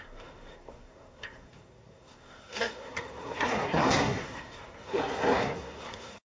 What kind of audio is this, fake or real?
fake